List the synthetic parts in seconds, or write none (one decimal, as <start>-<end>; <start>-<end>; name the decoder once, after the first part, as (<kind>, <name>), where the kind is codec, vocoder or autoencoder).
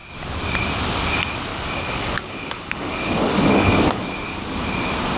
1.5-4.0 (codec, DAC)